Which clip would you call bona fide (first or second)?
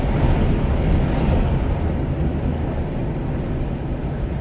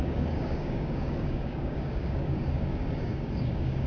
first